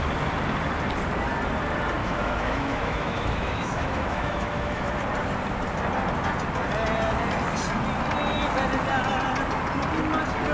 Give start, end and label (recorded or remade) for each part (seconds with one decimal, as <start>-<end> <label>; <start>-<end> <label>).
0.0-2.0 recorded; 2.0-4.9 remade; 4.9-10.5 recorded